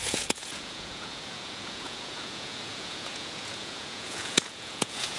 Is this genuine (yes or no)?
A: no